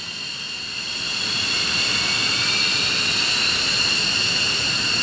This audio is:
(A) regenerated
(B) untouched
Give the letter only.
A